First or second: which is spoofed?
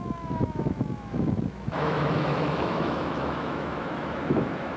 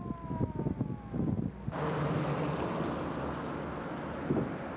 first